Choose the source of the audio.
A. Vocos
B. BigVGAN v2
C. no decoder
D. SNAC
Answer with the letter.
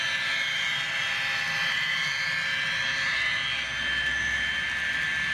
C